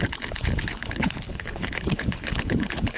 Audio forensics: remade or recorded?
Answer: remade